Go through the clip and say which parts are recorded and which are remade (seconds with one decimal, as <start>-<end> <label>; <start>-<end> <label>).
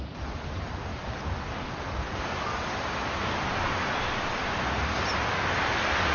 0.0-6.1 recorded